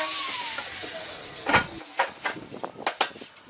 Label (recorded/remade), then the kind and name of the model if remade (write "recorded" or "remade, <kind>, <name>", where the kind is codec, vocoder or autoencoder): recorded